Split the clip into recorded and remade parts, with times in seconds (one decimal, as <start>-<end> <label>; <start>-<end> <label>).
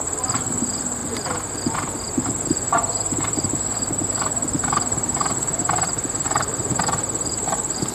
0.0-7.9 remade